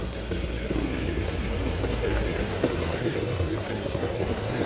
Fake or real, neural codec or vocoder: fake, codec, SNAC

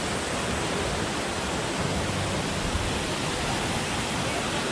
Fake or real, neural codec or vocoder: real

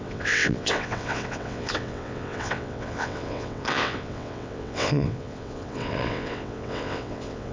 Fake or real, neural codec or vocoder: fake, vocoder, WaveNeXt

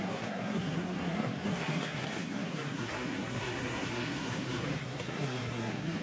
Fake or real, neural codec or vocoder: fake, codec, SNAC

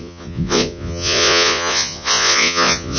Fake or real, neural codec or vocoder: fake, vocoder, Vocos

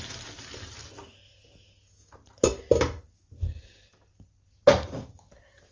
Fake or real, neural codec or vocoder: real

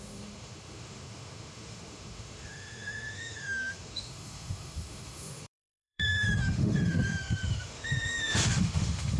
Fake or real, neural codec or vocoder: fake, autoencoder, DAC-VAE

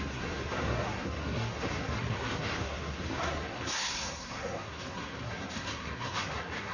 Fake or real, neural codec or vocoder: fake, codec, SNAC